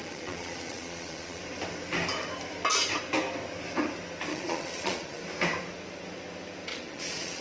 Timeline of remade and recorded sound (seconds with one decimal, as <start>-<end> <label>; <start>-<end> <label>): 0.0-1.4 remade; 1.4-4.3 recorded; 4.3-5.2 remade; 5.2-6.7 recorded; 6.7-7.4 remade